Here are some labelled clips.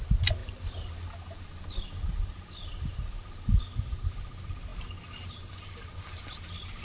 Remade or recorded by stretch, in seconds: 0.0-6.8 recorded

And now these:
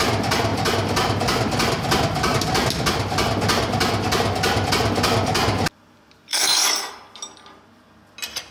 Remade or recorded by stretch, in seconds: 0.0-6.3 recorded; 6.3-6.9 remade; 6.9-8.5 recorded